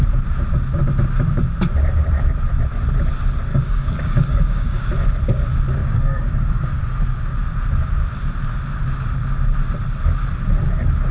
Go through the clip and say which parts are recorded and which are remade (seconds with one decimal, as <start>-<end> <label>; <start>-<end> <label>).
0.0-3.5 recorded; 3.5-4.9 remade; 4.9-5.8 recorded; 5.8-6.8 remade; 6.8-11.1 recorded